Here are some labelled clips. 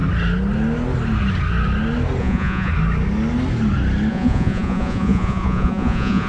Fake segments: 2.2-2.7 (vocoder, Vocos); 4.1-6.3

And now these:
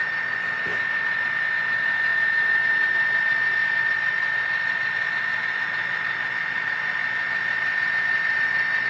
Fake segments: none